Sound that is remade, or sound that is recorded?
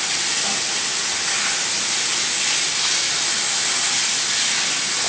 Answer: recorded